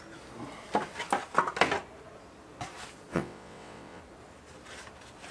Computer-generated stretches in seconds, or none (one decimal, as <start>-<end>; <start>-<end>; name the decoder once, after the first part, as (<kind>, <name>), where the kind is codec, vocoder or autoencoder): 3.1-4.0 (vocoder, WaveNeXt)